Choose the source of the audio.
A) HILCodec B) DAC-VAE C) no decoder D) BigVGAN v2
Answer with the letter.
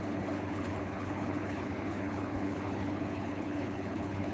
A